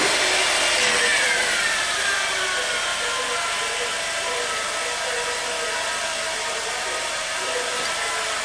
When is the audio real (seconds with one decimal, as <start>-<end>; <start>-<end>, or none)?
0.0-8.4